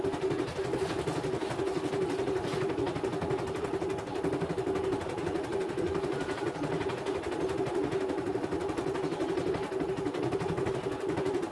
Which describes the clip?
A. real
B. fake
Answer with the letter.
A